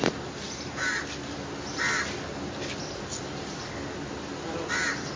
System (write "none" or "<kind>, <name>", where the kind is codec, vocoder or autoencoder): none